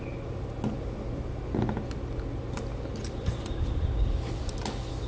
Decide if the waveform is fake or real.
real